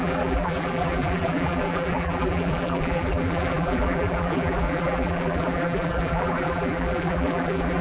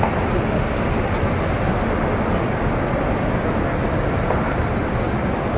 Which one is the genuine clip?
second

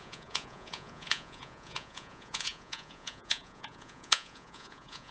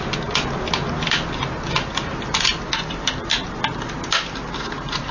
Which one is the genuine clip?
second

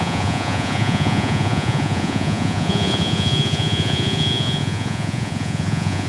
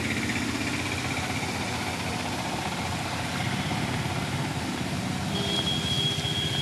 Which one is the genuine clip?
second